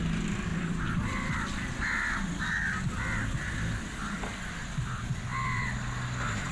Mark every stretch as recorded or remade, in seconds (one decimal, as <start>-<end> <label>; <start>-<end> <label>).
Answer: 0.0-0.5 recorded; 0.5-2.5 remade; 2.5-5.3 recorded; 5.3-5.8 remade; 5.8-6.5 recorded